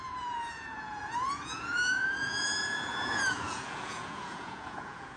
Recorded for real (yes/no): no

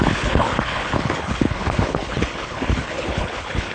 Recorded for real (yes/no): no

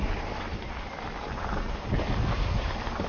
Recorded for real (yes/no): yes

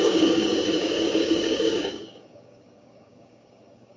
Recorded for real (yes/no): no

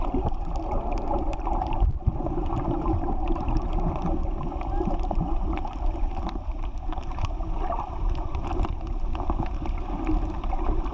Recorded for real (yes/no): yes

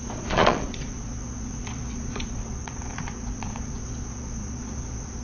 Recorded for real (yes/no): no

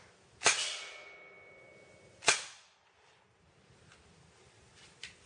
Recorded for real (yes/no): yes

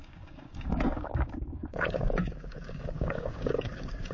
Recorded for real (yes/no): no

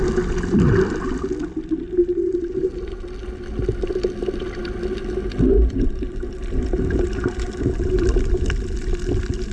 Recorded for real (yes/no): yes